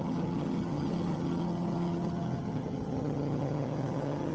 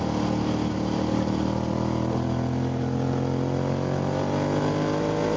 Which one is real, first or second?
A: second